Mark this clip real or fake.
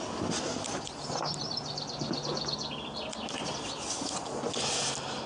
real